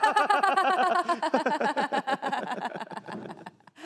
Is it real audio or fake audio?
real